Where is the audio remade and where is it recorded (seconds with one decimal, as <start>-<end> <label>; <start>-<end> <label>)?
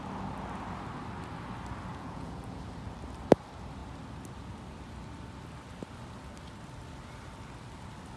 0.0-1.9 recorded; 1.9-2.6 remade; 2.6-8.2 recorded